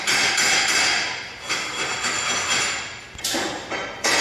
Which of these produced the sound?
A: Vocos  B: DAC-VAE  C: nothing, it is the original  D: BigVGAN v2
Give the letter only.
C